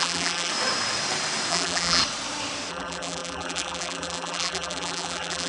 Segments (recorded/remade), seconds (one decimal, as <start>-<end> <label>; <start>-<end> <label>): 0.0-0.5 remade; 0.5-1.5 recorded; 1.5-2.0 remade; 2.0-2.7 recorded; 2.7-5.5 remade

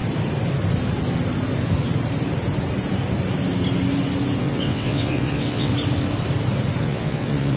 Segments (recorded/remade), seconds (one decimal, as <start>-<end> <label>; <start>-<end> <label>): 0.0-4.4 recorded; 4.4-5.7 remade; 5.7-6.8 recorded; 6.8-7.6 remade

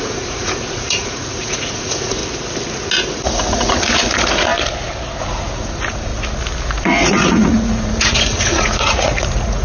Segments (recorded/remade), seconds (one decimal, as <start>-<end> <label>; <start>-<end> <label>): 0.0-2.2 remade; 2.2-3.3 recorded; 3.3-4.5 remade; 4.5-5.2 recorded; 5.2-6.1 remade; 6.1-6.7 recorded; 6.7-9.6 remade

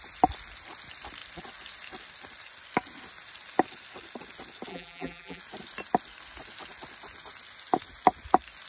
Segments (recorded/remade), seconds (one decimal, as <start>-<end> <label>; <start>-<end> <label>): 0.0-4.7 recorded; 4.7-5.4 remade; 5.4-8.7 recorded

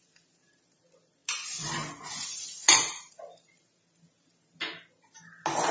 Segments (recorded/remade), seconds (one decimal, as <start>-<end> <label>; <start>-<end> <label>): 0.0-5.7 recorded